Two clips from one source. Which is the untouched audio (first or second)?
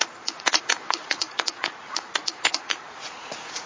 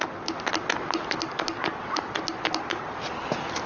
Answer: second